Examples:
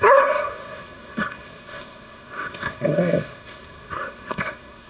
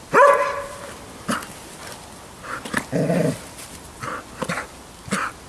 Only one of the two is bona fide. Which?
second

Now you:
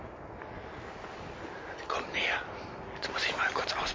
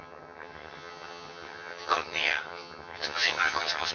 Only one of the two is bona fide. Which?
first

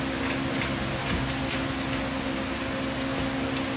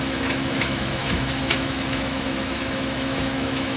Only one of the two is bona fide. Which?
first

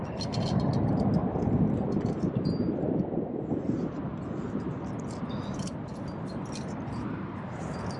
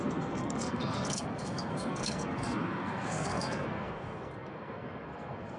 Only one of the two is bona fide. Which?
first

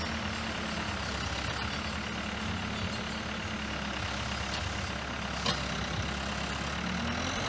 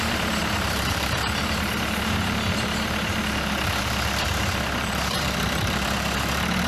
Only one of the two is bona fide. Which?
first